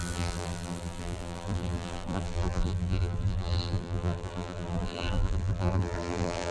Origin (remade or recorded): remade